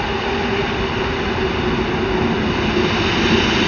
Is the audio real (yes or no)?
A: yes